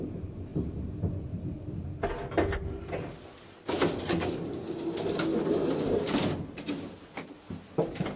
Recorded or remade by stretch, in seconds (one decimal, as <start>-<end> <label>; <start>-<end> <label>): 0.0-8.2 recorded